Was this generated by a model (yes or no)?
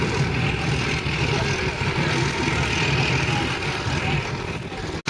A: no